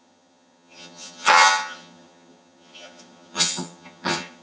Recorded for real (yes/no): no